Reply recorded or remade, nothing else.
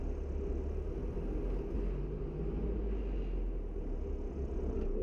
recorded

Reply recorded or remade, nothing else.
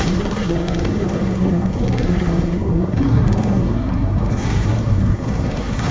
remade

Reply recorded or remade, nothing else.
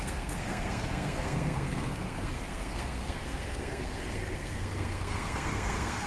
remade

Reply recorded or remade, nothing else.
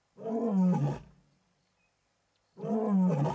recorded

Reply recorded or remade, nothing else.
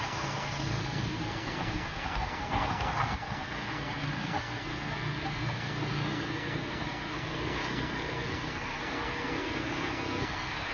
remade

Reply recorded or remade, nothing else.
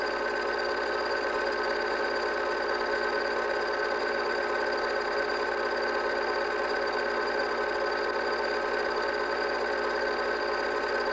recorded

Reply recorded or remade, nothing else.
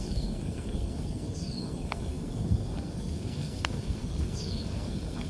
remade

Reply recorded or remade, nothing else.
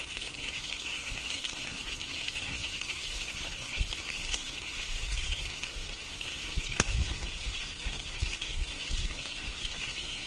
remade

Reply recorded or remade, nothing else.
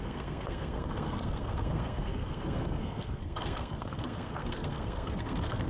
remade